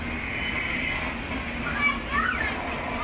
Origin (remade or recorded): recorded